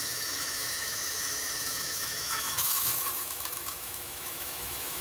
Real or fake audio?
fake